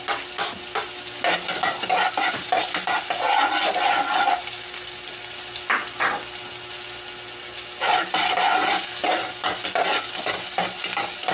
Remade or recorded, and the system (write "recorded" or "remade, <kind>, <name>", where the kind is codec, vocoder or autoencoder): recorded